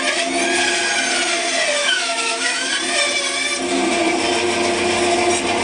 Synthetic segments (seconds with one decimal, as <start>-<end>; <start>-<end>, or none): 1.8-2.7